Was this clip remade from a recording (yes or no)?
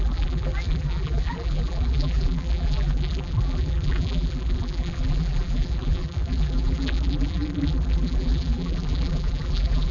yes